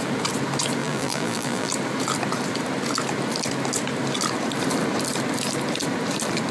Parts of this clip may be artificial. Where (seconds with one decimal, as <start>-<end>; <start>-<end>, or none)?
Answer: 0.8-1.7